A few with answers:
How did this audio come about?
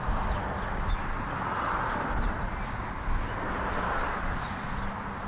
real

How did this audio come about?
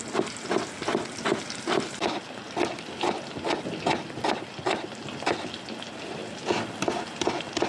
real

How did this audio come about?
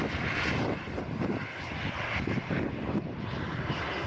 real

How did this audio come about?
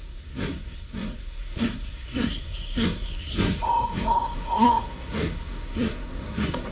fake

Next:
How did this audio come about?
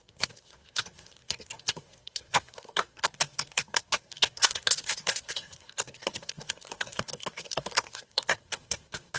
fake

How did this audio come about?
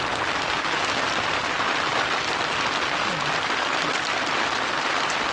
real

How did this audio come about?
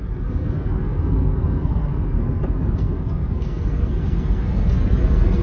fake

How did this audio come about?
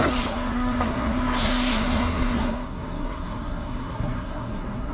fake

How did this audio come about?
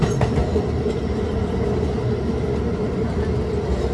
real